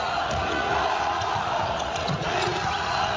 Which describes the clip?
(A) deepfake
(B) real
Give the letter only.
A